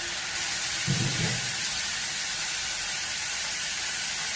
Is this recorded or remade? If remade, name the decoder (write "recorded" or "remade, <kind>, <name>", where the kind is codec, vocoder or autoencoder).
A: remade, vocoder, BigVGAN v2